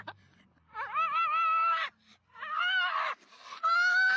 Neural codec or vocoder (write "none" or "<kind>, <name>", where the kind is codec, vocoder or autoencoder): none